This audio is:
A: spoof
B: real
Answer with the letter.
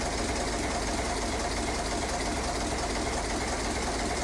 B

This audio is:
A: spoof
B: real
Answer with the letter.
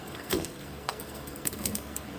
A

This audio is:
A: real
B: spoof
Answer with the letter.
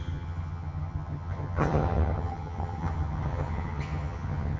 B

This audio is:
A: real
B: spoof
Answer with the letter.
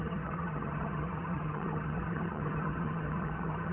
B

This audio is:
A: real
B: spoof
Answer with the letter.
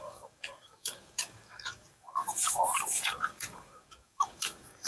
B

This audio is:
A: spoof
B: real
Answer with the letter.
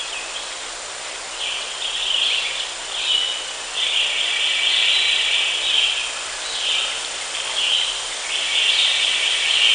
B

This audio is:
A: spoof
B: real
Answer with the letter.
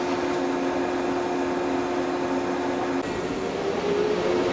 B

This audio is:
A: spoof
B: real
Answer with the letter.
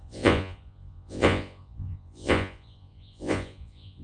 A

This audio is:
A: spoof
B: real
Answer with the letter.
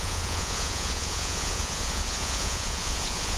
A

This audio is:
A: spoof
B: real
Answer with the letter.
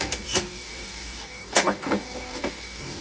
A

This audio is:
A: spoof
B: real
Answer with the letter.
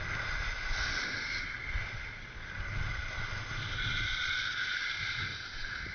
B